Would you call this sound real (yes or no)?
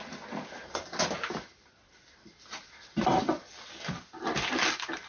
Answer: yes